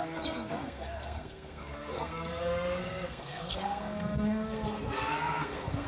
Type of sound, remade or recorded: remade